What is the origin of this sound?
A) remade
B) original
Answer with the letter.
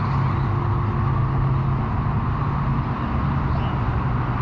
B